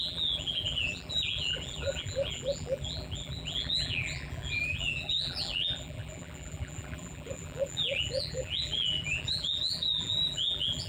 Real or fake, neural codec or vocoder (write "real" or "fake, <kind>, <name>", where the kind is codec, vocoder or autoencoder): fake, vocoder, BigVGAN v2